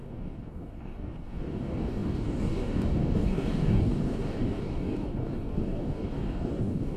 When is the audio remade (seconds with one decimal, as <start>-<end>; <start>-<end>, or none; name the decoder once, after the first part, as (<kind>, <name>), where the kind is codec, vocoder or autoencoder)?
0.0-7.0 (codec, DAC)